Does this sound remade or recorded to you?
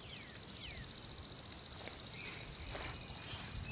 recorded